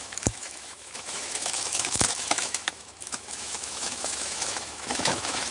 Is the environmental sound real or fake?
fake